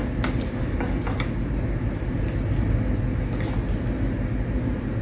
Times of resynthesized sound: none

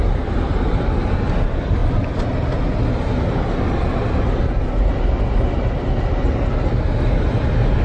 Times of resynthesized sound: none

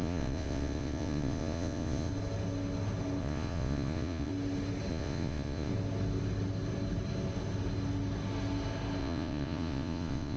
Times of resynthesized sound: 0.0-2.1 (vocoder, Vocos); 3.2-4.3; 4.9-5.7; 9.0-10.4

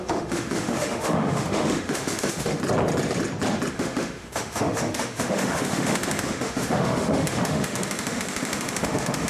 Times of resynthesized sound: 0.0-2.6 (autoencoder, DAC-VAE); 3.7-9.3

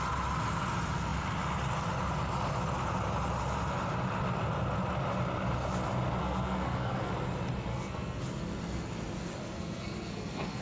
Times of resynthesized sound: 6.2-7.1 (codec, SNAC); 7.7-8.2; 9.4-10.6

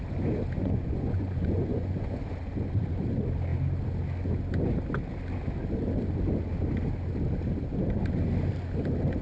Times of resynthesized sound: 0.6-2.2 (vocoder, Vocos)